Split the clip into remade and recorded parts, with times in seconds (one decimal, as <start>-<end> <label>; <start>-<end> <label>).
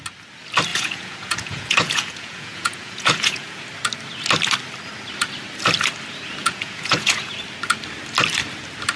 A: 0.0-0.7 recorded; 0.7-3.6 remade; 3.6-6.4 recorded; 6.4-7.3 remade; 7.3-9.0 recorded